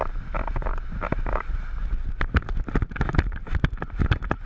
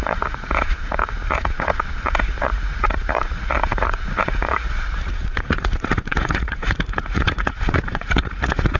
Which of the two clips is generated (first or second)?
second